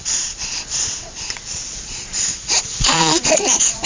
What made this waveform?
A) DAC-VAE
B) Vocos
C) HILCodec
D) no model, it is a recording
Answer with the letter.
B